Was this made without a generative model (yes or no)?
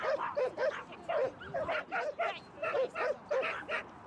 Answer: yes